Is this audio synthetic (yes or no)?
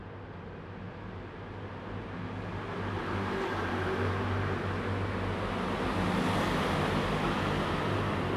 no